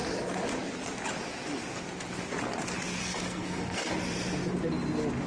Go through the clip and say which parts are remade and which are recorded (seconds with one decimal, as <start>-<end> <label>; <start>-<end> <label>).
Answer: 0.0-3.0 recorded; 3.0-3.9 remade; 3.9-5.3 recorded